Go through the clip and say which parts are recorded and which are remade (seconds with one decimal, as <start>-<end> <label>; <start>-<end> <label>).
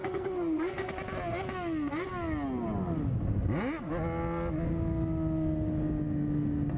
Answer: 0.0-0.9 remade; 0.9-6.8 recorded